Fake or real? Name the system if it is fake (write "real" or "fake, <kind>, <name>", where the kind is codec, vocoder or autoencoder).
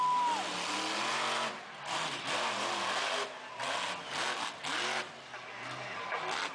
real